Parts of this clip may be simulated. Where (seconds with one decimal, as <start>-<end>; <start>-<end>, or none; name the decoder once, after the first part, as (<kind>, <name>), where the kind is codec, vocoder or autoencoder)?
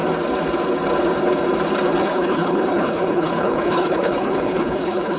2.0-5.2 (codec, HILCodec)